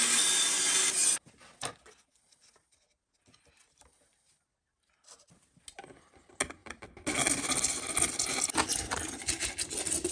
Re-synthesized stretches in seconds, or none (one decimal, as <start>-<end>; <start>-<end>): 8.7-9.5